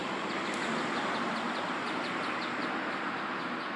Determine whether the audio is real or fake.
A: real